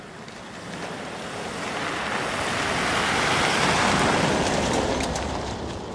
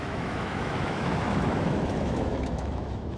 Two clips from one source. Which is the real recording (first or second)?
first